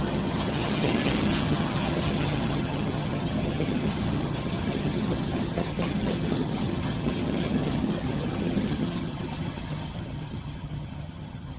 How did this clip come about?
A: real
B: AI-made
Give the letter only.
B